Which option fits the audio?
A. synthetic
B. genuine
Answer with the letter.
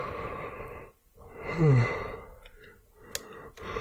B